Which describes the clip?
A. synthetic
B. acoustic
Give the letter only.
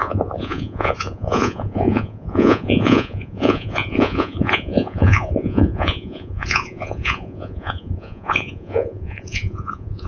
A